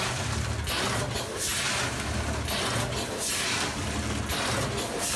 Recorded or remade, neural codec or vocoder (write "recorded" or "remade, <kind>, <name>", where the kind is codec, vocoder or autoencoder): recorded